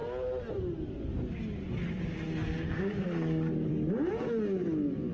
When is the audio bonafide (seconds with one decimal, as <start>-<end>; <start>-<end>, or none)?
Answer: 0.0-2.7; 3.9-5.1